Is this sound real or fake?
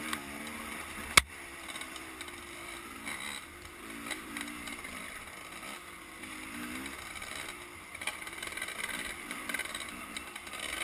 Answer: real